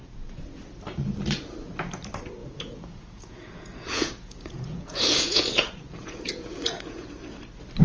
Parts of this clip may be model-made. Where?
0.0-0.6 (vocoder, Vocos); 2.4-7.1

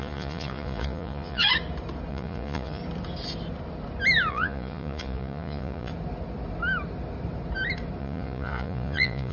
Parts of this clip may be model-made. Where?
0.0-1.5 (vocoder, Vocos); 2.1-2.8; 4.3-5.9; 8.0-9.3